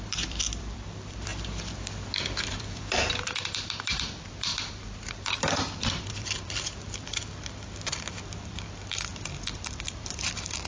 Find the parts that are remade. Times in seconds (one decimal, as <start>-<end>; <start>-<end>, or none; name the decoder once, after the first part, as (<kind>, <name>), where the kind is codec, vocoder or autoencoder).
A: 0.0-1.3 (vocoder, BigVGAN v2); 2.5-7.2; 8.1-9.1; 9.6-10.7